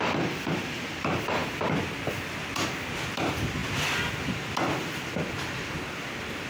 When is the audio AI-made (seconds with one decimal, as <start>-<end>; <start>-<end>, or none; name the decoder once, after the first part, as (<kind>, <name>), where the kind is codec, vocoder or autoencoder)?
0.0-3.6 (vocoder, BigVGAN v2); 5.0-6.5